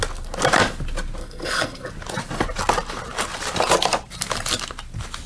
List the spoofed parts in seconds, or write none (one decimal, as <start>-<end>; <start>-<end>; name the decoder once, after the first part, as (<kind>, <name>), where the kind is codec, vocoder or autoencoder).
1.2-1.9 (codec, SNAC)